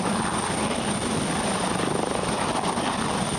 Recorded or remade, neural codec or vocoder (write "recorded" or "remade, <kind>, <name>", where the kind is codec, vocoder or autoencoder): recorded